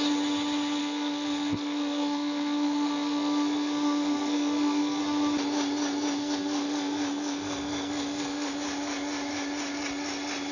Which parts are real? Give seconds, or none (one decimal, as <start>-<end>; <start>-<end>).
0.0-0.8; 5.0-6.2; 8.5-10.5